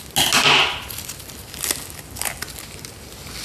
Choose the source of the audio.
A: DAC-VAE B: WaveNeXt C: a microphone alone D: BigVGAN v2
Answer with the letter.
C